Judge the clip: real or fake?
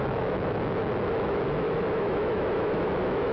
fake